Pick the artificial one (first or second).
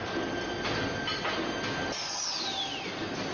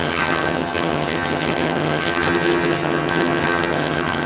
second